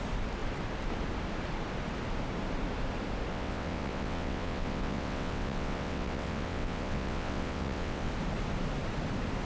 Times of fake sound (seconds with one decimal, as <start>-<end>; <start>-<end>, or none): 3.3-8.1

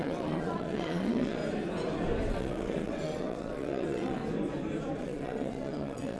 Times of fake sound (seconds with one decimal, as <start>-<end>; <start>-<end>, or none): 0.0-1.4; 2.3-4.2; 5.0-6.2